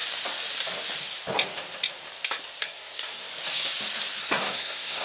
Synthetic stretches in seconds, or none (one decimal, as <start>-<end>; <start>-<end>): 2.6-3.3; 4.2-5.0